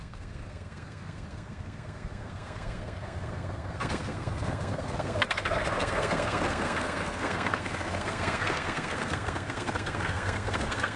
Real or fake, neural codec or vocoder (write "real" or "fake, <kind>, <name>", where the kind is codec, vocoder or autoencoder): fake, codec, SNAC